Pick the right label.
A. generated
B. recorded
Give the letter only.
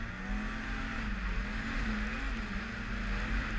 B